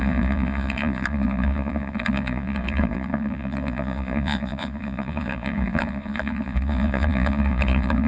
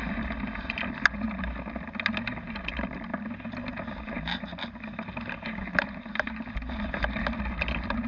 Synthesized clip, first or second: first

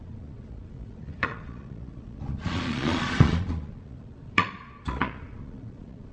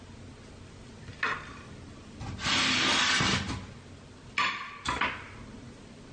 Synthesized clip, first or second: first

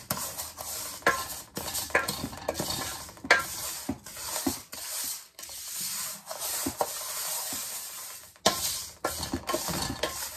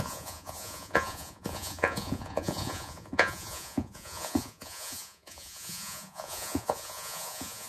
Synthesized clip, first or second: second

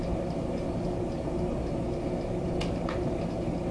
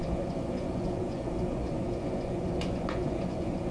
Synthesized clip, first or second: second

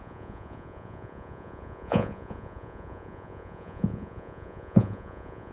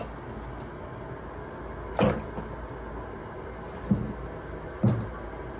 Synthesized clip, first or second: first